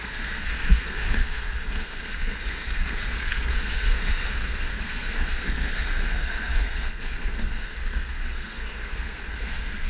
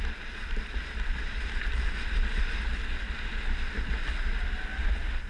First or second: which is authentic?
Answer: second